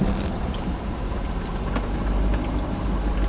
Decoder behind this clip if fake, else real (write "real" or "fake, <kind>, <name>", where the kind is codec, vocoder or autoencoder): real